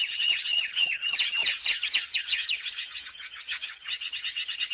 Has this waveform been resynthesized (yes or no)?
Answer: yes